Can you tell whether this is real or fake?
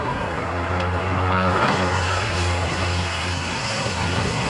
fake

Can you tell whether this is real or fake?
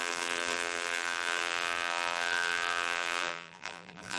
fake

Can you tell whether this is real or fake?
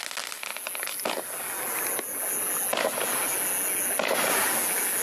real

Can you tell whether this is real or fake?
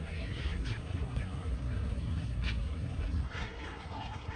fake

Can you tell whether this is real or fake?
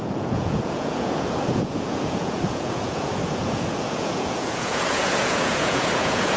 fake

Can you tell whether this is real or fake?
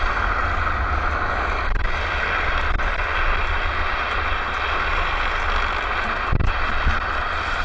real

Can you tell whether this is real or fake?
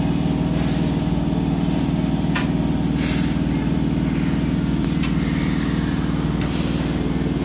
real